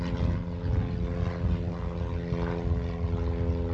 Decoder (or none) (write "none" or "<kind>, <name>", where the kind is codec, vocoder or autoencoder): none